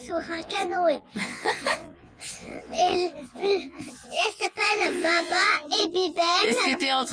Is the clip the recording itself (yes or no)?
no